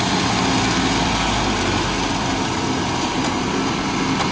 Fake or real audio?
real